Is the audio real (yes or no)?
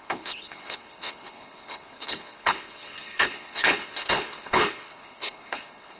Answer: no